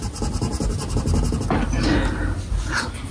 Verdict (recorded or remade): recorded